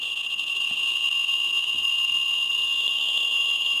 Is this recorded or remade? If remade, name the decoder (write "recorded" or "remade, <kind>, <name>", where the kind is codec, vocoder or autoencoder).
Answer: remade, vocoder, Vocos